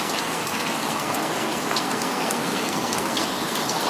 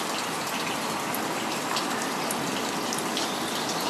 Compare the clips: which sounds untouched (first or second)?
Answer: second